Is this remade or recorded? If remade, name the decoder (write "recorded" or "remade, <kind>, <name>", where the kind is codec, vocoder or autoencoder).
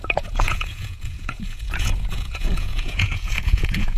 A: remade, vocoder, Vocos